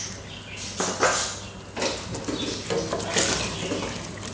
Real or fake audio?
real